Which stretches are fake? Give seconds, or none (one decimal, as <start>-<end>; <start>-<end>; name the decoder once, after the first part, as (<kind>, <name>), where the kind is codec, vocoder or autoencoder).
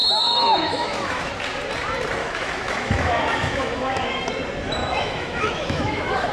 0.0-1.3 (autoencoder, DAC-VAE); 2.2-4.2; 4.8-6.3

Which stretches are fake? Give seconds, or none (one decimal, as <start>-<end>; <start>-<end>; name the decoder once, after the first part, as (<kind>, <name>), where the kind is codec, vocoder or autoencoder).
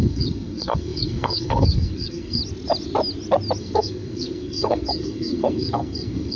0.0-2.4 (codec, SNAC); 3.6-6.4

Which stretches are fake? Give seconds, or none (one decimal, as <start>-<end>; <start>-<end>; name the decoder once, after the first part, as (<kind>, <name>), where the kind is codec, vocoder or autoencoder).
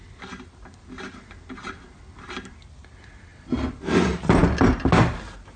none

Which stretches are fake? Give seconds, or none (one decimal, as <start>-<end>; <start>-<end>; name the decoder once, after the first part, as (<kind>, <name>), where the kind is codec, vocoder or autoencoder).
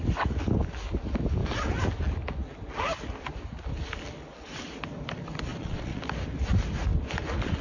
5.5-6.0 (vocoder, Vocos)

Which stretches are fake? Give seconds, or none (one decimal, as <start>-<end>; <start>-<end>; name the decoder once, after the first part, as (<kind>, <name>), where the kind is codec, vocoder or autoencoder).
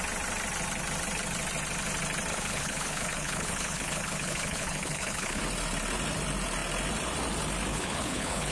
2.3-5.4 (codec, HILCodec); 7.7-8.5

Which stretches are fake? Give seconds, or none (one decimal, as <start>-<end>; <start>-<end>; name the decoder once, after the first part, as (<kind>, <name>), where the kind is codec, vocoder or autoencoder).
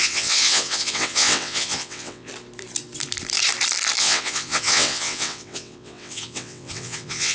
0.0-2.3 (vocoder, WaveNeXt); 4.0-7.3